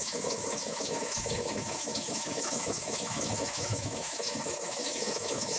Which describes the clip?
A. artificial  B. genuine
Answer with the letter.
A